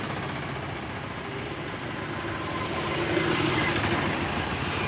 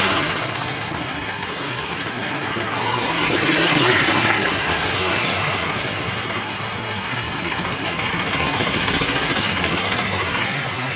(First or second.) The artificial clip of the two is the second